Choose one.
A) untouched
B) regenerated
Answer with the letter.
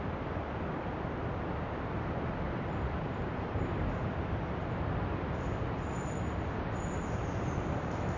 A